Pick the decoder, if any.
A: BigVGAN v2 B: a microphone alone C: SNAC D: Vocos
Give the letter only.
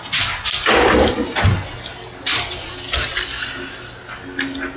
B